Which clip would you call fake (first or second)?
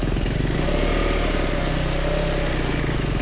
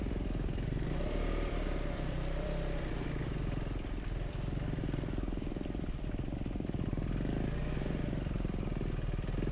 second